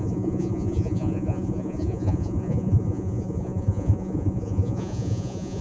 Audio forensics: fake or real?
fake